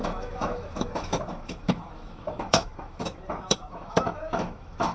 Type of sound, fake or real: fake